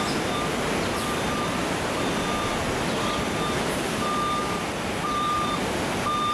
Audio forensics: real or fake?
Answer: fake